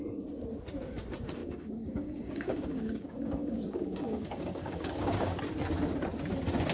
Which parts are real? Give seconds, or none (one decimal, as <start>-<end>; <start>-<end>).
0.0-1.4; 5.4-6.7